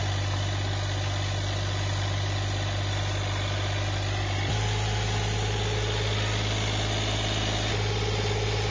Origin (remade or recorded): recorded